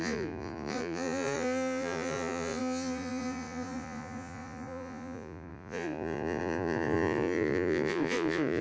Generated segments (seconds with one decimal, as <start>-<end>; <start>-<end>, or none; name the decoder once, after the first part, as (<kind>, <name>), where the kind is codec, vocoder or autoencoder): 0.0-8.6 (vocoder, Vocos)